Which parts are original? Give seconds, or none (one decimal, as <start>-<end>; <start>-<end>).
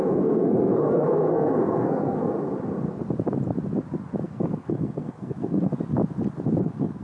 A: 2.2-4.2; 5.7-6.6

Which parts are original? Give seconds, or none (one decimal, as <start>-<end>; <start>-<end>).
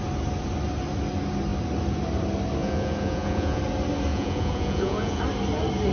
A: 0.0-2.6; 3.6-4.1; 5.2-5.9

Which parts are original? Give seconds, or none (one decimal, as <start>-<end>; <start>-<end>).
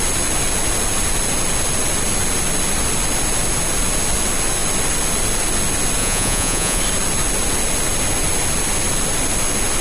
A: 0.0-6.0; 6.8-9.8